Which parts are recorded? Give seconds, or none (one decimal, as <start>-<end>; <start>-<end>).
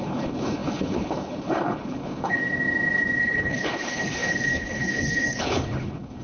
2.4-3.2